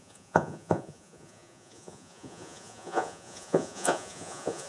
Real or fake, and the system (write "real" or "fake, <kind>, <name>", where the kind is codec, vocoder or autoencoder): fake, vocoder, Vocos